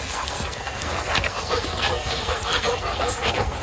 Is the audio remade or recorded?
remade